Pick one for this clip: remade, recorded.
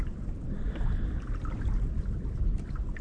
recorded